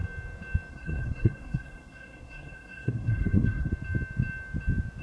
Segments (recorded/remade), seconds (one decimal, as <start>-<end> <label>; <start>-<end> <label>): 0.0-0.7 recorded; 0.7-3.7 remade; 3.7-5.0 recorded